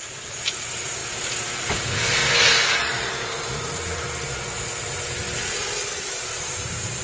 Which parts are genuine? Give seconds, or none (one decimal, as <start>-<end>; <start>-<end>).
1.0-1.6; 2.2-2.8; 5.2-5.7